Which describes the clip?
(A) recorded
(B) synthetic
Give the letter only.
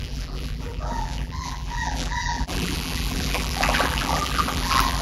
B